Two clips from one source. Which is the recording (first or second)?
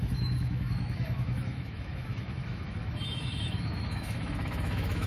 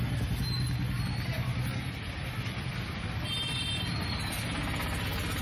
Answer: second